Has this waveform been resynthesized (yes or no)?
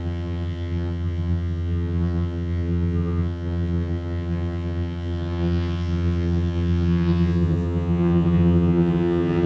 yes